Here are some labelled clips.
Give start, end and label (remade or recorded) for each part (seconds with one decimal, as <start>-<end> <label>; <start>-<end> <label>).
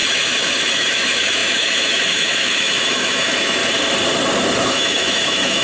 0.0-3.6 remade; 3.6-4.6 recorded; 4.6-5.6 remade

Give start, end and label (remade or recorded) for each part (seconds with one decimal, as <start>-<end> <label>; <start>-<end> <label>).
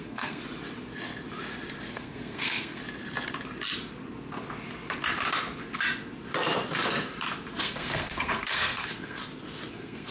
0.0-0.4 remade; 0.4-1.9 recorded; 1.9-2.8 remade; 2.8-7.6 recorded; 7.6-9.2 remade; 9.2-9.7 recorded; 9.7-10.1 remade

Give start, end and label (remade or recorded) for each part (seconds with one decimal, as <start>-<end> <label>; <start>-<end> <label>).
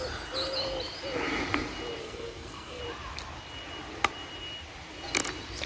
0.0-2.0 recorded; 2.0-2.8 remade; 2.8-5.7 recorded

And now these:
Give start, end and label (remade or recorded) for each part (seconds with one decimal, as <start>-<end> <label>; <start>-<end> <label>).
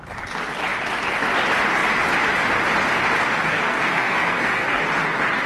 0.0-3.5 recorded; 3.5-4.8 remade; 4.8-5.5 recorded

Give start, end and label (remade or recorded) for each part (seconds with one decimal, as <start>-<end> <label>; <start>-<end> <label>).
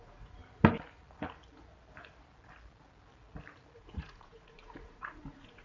0.0-0.4 remade; 0.4-3.8 recorded; 3.8-5.6 remade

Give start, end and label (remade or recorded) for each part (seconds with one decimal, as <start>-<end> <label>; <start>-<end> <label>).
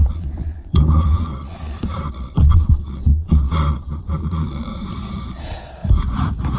0.0-4.7 remade; 4.7-5.3 recorded; 5.3-5.8 remade; 5.8-6.6 recorded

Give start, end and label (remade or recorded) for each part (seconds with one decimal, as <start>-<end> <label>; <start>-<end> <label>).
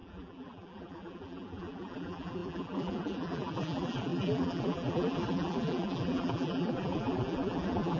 0.0-8.0 remade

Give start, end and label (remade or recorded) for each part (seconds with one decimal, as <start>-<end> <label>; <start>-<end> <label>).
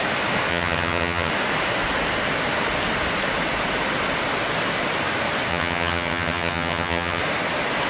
0.0-0.5 recorded; 0.5-1.3 remade; 1.3-5.5 recorded; 5.5-7.2 remade; 7.2-7.9 recorded